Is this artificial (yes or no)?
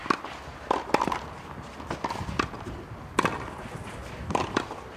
no